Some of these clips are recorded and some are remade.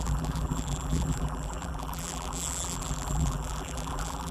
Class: remade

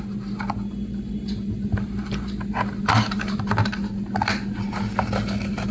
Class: recorded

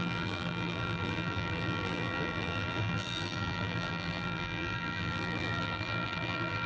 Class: remade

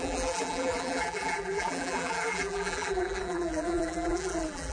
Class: remade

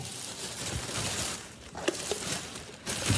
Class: remade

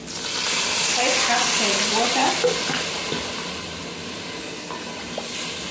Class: recorded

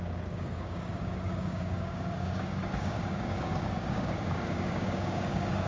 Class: remade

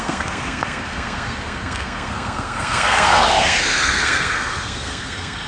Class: remade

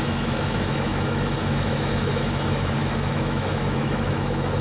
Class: remade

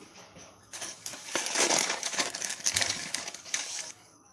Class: remade